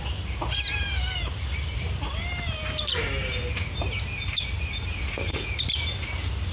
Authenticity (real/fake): real